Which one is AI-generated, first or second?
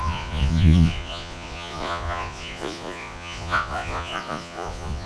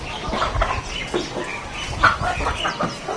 first